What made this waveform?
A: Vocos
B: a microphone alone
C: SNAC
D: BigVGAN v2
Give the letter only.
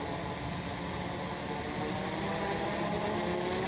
B